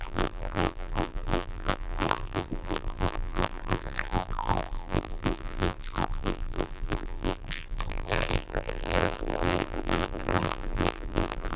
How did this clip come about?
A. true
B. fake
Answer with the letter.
B